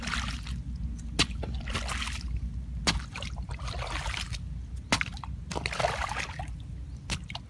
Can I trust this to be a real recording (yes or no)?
yes